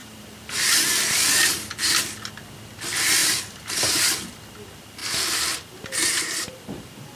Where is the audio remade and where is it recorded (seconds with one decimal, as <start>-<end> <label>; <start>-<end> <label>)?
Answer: 0.0-0.6 remade; 0.6-3.2 recorded; 3.2-4.0 remade; 4.0-7.1 recorded